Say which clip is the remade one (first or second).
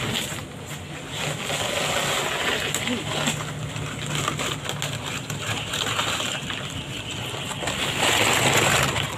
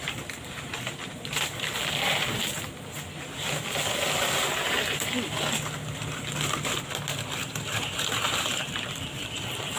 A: second